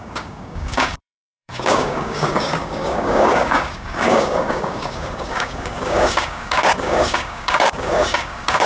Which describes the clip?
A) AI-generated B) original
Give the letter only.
A